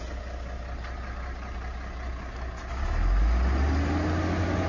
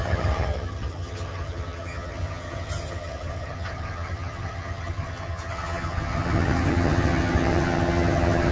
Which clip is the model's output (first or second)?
second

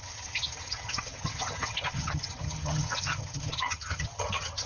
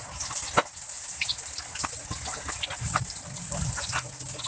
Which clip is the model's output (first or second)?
first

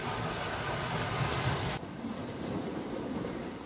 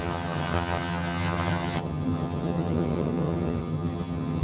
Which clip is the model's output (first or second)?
second